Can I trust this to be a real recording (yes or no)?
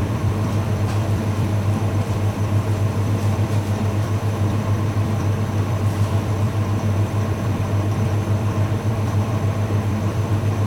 no